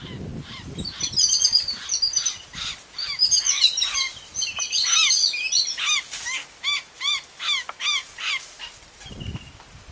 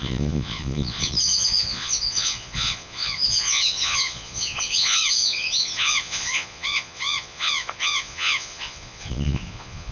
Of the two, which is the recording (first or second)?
first